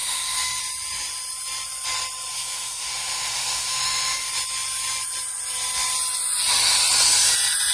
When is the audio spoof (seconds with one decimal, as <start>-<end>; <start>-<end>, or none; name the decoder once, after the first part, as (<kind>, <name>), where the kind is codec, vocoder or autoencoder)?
0.0-0.6 (autoencoder, DAC-VAE); 2.3-4.3